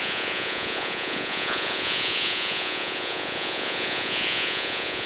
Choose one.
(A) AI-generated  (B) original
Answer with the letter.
A